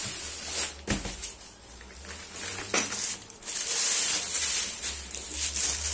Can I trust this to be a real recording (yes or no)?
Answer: yes